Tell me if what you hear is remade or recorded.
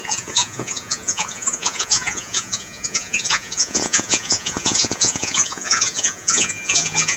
remade